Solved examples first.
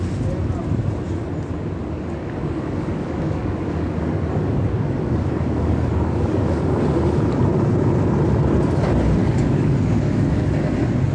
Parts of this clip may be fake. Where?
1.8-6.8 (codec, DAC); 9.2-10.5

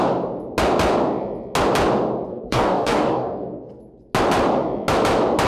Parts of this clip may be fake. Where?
2.3-3.7 (codec, DAC)